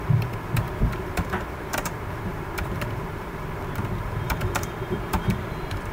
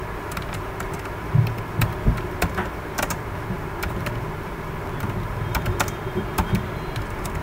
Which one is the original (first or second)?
second